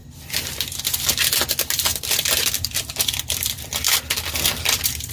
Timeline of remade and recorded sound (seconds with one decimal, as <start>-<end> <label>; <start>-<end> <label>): 0.0-0.5 remade; 0.5-1.9 recorded; 1.9-5.1 remade